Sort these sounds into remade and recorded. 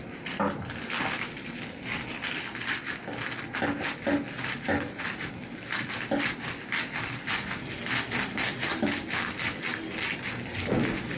recorded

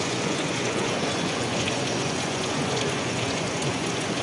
remade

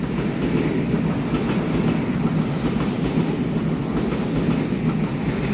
recorded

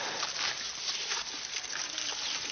recorded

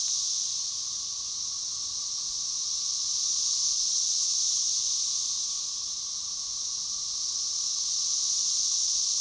recorded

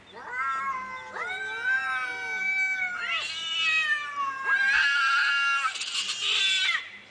recorded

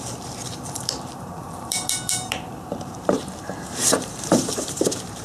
remade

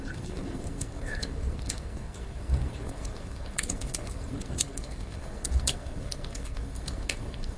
remade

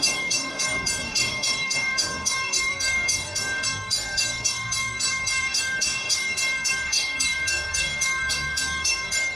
remade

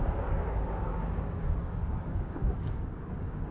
remade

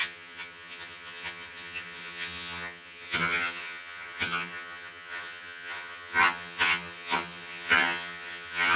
remade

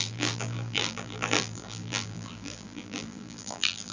remade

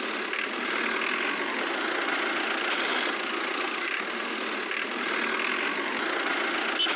recorded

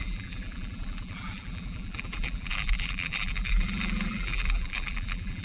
remade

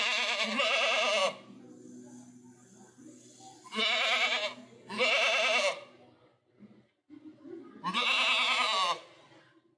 recorded